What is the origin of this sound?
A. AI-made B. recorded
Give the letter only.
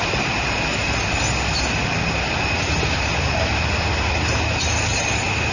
B